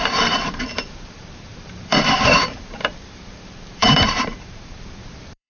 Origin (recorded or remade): remade